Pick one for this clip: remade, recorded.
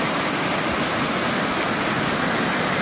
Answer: recorded